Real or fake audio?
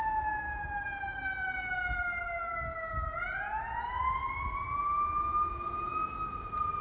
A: real